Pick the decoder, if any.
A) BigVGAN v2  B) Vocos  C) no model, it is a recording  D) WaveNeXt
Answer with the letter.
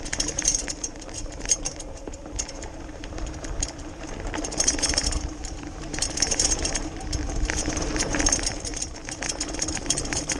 A